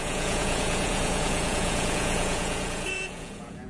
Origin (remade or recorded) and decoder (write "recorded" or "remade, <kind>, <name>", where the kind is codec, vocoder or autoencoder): remade, vocoder, Vocos